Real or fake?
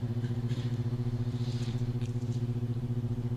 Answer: fake